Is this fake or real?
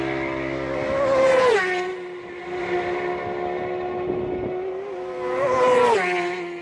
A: real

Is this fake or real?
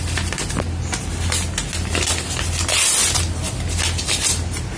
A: real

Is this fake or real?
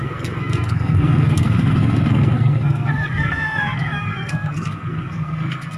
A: fake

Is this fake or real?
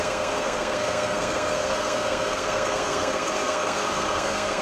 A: fake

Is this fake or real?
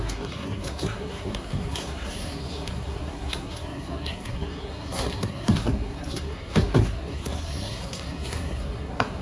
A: fake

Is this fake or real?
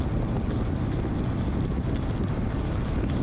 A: real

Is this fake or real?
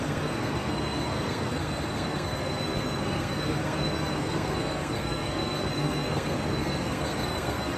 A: fake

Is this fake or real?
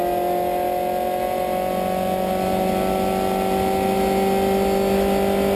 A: real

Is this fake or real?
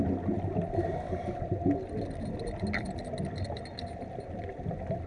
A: real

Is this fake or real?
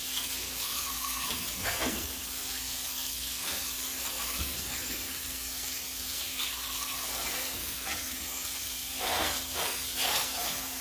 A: fake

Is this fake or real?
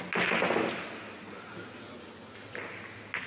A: real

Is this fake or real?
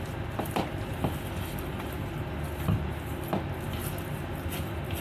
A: real